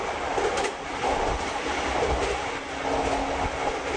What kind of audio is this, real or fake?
real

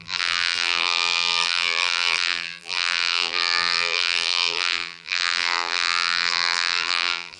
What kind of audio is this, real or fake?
fake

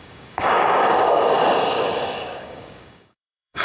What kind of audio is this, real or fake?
fake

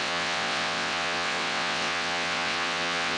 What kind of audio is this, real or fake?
fake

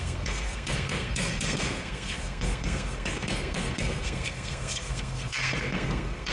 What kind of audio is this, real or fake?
fake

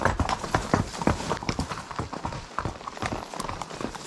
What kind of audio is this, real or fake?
real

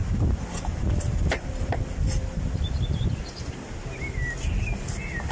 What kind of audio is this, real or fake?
real